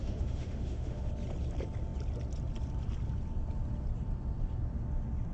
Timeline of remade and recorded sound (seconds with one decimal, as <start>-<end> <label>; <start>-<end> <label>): 0.0-1.1 remade; 1.1-5.3 recorded